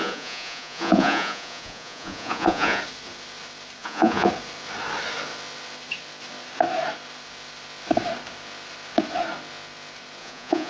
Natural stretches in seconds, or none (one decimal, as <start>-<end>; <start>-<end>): 2.8-3.8; 4.3-10.2